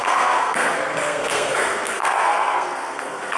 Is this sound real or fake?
fake